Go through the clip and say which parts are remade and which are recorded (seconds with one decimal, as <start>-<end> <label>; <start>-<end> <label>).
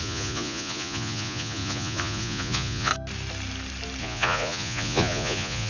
0.0-2.9 remade; 2.9-4.0 recorded; 4.0-5.7 remade